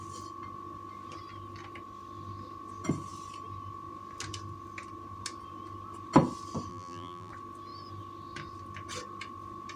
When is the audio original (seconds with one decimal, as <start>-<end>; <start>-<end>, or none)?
0.0-6.7; 7.3-9.8